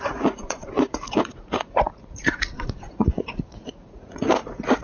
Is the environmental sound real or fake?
fake